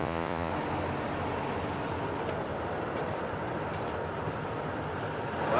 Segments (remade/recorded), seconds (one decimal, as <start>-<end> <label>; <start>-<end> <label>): 0.0-0.5 remade; 0.5-5.6 recorded